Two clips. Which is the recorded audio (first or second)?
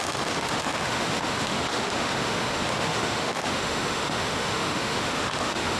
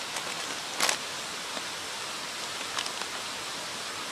second